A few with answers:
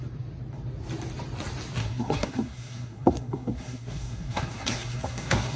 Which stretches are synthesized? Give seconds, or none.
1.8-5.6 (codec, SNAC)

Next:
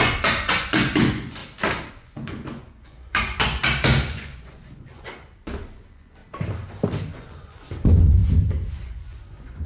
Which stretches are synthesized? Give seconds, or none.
0.0-1.4 (vocoder, Vocos); 1.9-3.6; 4.1-6.2; 7.1-8.2; 8.7-9.7

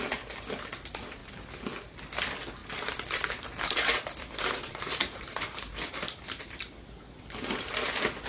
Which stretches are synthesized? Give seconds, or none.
1.2-1.7 (vocoder, BigVGAN v2); 2.6-6.6

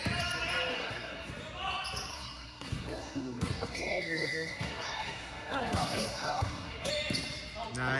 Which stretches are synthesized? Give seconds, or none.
0.7-1.3 (codec, SNAC); 2.1-6.9